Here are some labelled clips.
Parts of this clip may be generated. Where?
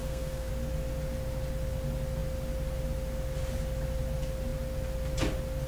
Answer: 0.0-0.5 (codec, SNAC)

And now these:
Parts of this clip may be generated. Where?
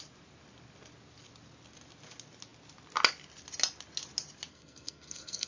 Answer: 4.5-5.5 (codec, SNAC)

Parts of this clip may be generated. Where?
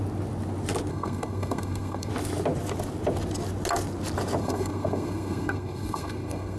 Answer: 0.9-2.1 (codec, SNAC); 4.4-6.6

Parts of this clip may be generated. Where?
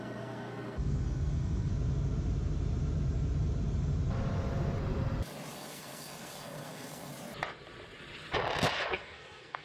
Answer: 0.0-1.7 (codec, SNAC); 5.5-7.1; 8.8-9.6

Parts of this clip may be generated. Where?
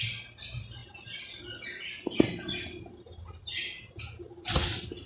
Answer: none